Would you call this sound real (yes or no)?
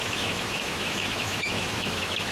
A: no